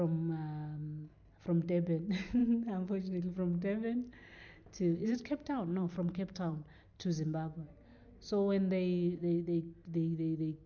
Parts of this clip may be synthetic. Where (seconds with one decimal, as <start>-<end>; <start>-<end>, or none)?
4.3-7.8